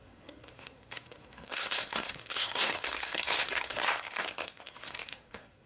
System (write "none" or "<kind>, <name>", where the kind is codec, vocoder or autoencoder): codec, SNAC